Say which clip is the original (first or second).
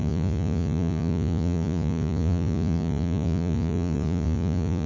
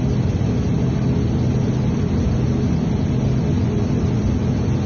second